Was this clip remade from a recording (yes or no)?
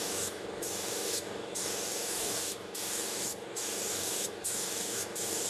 yes